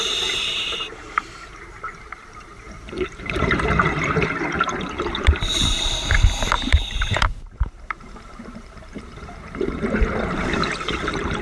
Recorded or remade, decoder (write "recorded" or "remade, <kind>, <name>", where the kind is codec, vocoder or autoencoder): remade, vocoder, BigVGAN v2